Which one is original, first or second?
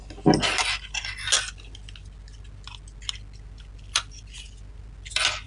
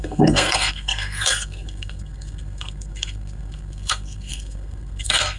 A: first